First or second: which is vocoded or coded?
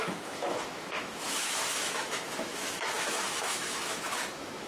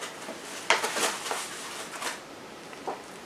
first